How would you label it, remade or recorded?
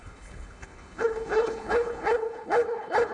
remade